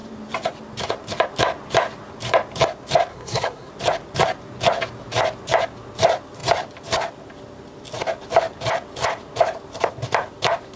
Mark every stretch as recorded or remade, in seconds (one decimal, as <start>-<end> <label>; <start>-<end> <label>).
0.0-3.1 recorded; 3.1-3.7 remade; 3.7-10.8 recorded